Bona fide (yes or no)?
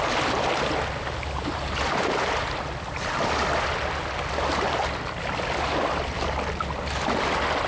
yes